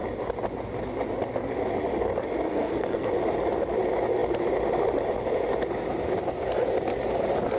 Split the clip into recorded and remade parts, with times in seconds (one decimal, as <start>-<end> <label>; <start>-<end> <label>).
0.0-2.5 recorded; 2.5-3.1 remade; 3.1-7.6 recorded